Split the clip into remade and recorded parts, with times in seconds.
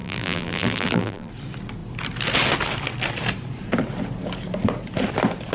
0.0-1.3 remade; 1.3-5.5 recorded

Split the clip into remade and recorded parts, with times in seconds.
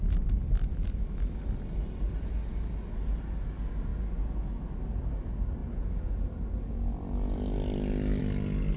0.0-0.7 recorded; 0.7-1.4 remade; 1.4-8.8 recorded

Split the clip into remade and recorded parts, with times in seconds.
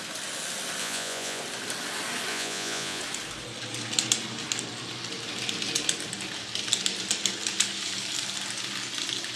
0.0-0.8 recorded; 0.8-1.4 remade; 1.4-2.3 recorded; 2.3-3.0 remade; 3.0-9.4 recorded